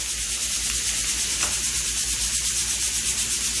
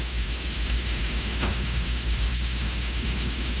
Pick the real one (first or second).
first